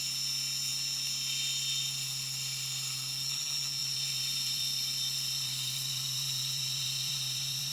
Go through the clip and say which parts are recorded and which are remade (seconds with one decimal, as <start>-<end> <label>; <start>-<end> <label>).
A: 0.0-3.8 recorded; 3.8-7.7 remade